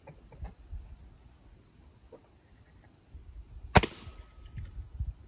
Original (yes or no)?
yes